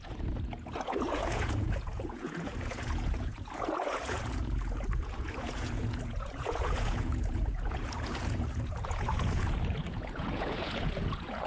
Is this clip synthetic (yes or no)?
yes